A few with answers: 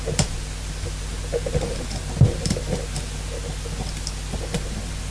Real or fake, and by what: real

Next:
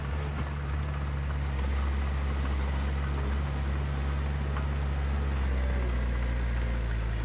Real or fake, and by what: real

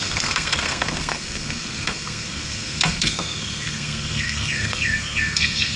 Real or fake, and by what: fake, codec, SNAC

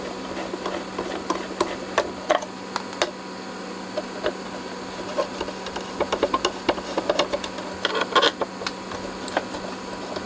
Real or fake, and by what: real